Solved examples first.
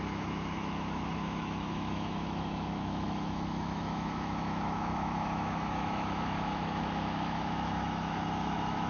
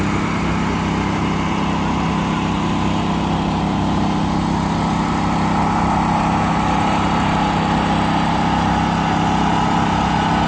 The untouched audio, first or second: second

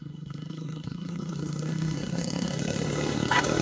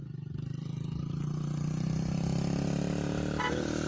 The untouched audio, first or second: second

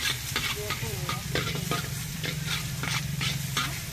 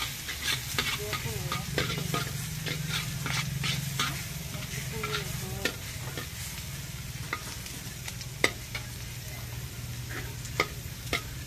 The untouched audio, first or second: second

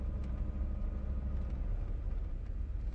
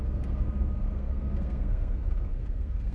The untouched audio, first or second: first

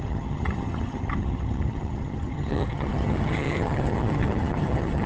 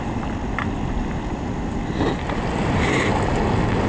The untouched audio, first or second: second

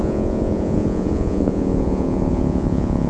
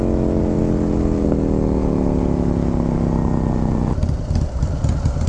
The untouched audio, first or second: second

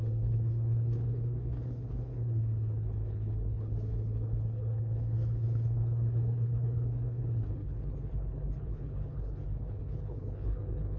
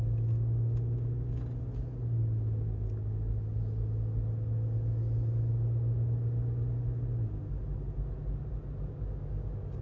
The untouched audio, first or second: second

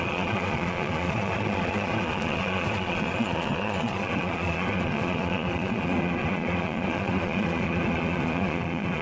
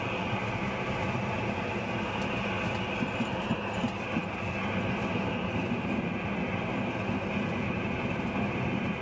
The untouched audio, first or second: second